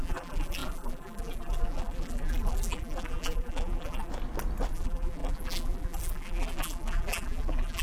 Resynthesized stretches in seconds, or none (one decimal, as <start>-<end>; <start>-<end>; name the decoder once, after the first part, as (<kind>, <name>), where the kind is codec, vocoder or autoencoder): 0.0-4.1 (vocoder, BigVGAN v2); 4.7-7.8